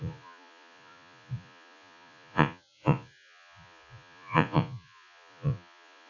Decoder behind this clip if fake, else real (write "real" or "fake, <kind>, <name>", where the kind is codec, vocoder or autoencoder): fake, vocoder, Vocos